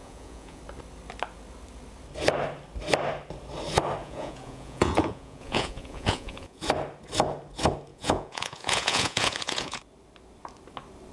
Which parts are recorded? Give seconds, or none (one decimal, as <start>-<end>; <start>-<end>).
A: 0.6-4.0; 6.7-7.9; 9.8-11.1